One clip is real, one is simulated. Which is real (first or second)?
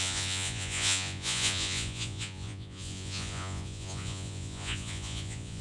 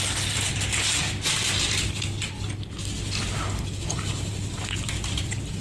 second